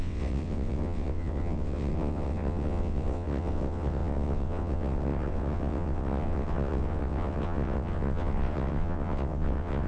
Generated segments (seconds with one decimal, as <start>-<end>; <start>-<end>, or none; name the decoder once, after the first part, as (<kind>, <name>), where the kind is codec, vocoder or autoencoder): 0.0-9.9 (vocoder, WaveNeXt)

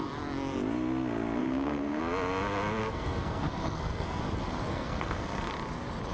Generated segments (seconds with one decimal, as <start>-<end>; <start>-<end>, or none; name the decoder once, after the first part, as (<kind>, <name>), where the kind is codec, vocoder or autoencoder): 1.4-2.0 (codec, SNAC); 2.8-4.2; 4.7-5.5

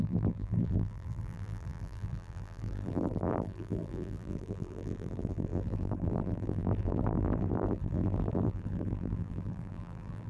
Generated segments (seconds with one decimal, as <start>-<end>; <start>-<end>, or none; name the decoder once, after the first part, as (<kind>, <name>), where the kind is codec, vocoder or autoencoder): 0.0-10.3 (vocoder, BigVGAN v2)

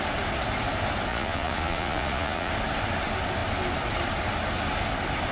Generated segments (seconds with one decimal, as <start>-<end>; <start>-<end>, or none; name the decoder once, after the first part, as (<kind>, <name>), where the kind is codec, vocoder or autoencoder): 1.1-2.5 (vocoder, Vocos)

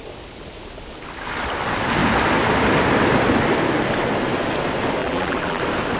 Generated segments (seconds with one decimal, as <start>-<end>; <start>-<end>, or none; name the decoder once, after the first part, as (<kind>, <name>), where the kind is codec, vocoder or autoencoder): 5.0-5.6 (vocoder, BigVGAN v2)

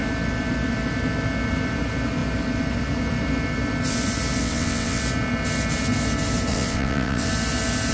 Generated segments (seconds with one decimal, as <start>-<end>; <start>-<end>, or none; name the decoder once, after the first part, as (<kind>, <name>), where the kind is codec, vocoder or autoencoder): 4.4-5.0 (vocoder, WaveNeXt); 6.5-7.3

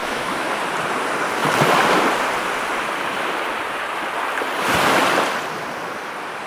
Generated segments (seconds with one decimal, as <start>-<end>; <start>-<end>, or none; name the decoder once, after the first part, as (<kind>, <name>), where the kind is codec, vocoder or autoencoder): 0.0-0.5 (autoencoder, DAC-VAE)

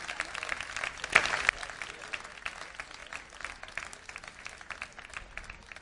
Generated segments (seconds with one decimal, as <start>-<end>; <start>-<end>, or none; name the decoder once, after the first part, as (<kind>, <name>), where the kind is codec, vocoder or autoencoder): 3.0-4.4 (vocoder, BigVGAN v2)